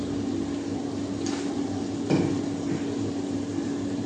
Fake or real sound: real